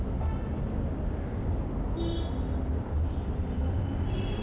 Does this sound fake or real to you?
real